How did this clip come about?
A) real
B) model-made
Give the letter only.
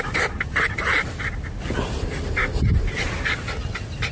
A